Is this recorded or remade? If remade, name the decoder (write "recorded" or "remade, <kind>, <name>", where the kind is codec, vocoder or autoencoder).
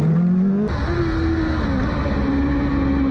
recorded